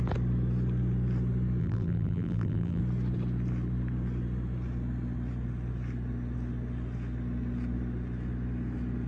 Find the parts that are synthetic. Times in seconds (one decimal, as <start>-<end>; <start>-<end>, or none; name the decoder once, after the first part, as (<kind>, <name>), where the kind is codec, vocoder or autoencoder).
1.6-2.8 (vocoder, BigVGAN v2)